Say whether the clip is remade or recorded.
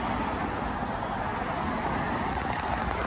recorded